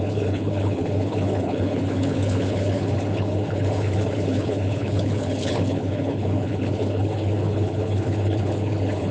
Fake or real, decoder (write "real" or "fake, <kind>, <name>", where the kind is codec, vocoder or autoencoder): fake, codec, HILCodec